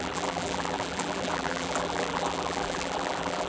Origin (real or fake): fake